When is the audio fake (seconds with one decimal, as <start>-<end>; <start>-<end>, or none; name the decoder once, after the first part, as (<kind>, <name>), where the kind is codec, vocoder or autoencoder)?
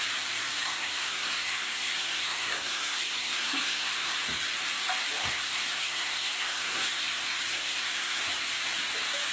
0.6-4.2 (codec, SNAC); 5.2-7.0; 7.5-8.2